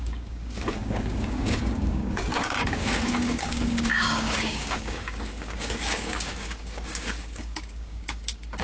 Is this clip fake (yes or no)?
yes